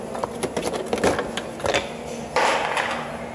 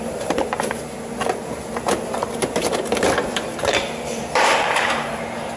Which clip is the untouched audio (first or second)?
first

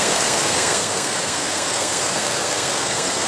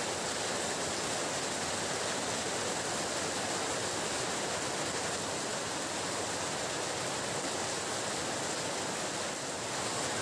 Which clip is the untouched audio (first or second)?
second